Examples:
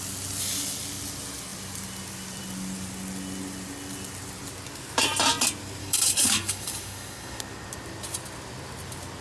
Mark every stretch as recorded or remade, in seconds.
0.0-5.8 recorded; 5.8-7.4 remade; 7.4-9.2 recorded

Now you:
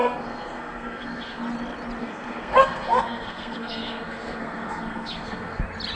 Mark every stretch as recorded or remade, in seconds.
0.0-1.4 remade; 1.4-2.0 recorded; 2.0-5.6 remade; 5.6-6.0 recorded

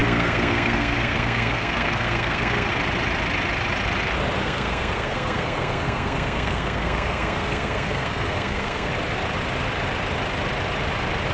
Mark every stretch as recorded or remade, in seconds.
0.0-2.7 remade; 2.7-4.4 recorded; 4.4-8.9 remade; 8.9-11.3 recorded

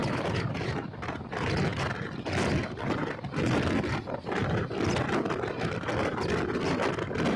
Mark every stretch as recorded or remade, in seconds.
0.0-0.7 remade; 0.7-7.4 recorded

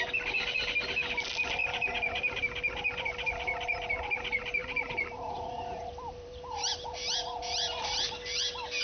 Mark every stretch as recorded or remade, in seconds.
0.0-1.6 recorded; 1.6-2.4 remade; 2.4-4.6 recorded; 4.6-8.1 remade; 8.1-8.8 recorded

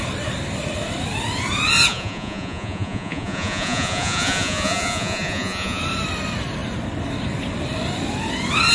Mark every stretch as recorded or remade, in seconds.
0.0-1.9 recorded; 1.9-5.8 remade; 5.8-8.7 recorded